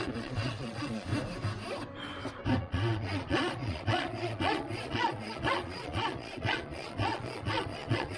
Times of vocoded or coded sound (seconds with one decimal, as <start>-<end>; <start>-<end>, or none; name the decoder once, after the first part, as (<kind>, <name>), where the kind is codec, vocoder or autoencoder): 0.0-1.1 (vocoder, Vocos); 2.6-8.2